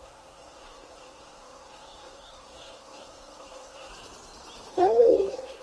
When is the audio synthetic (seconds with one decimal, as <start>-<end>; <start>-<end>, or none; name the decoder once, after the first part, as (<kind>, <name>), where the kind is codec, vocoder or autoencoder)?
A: 0.0-3.9 (codec, SNAC); 4.7-5.6